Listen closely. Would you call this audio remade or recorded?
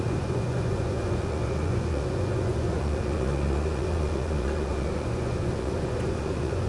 remade